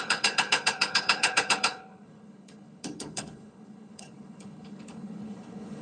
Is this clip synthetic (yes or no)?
yes